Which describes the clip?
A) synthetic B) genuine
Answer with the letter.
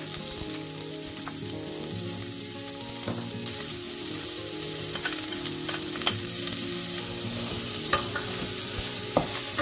B